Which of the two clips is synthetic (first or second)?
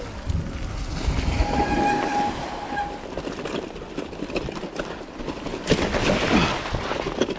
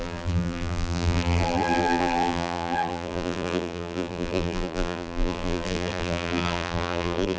second